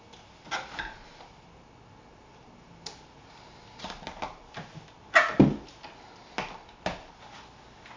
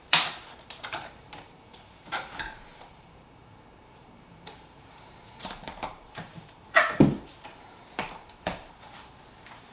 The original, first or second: first